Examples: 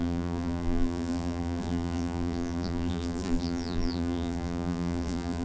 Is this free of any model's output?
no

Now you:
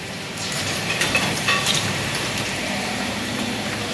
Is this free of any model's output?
no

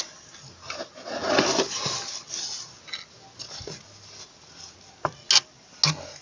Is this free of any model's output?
yes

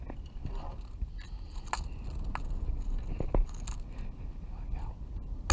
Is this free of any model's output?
yes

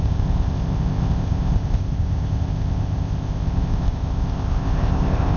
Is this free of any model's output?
no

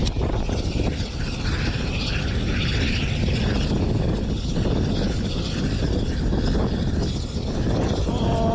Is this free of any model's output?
yes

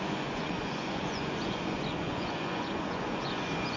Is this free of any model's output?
no